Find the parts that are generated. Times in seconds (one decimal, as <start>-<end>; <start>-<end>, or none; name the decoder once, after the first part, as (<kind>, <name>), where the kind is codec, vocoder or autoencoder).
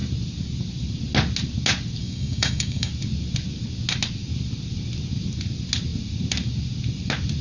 2.0-2.9 (codec, DAC)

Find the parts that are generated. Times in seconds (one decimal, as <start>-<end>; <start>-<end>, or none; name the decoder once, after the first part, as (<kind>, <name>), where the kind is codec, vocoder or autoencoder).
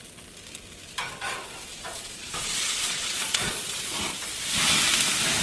1.7-4.0 (vocoder, Vocos)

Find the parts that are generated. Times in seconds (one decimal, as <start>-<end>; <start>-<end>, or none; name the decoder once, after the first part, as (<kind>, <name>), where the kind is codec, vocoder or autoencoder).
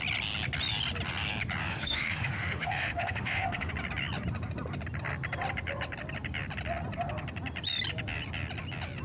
1.7-3.7 (autoencoder, DAC-VAE)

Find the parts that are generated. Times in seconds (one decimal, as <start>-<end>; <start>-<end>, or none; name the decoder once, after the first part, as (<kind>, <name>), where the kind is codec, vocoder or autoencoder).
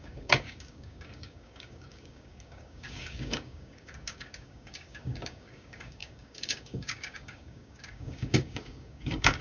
0.0-9.4 (codec, DAC)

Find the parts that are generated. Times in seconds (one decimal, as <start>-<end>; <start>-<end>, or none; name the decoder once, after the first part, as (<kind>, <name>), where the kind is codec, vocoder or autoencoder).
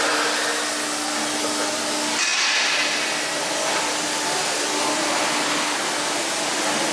none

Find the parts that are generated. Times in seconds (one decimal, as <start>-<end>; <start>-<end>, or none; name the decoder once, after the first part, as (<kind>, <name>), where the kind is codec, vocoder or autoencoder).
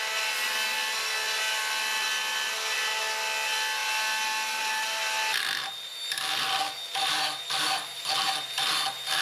none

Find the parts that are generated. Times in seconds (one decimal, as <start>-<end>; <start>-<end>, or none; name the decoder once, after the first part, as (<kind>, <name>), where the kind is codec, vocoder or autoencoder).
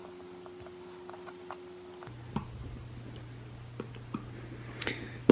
0.0-1.1 (vocoder, BigVGAN v2)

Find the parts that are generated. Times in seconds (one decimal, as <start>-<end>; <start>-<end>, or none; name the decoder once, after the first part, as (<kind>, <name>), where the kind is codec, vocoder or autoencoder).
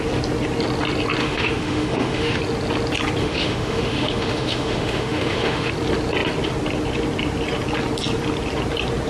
1.2-2.4 (autoencoder, DAC-VAE); 3.2-5.7